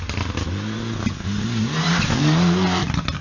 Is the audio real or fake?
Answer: fake